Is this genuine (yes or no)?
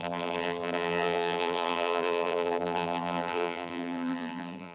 no